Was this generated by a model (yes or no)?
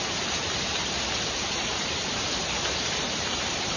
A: yes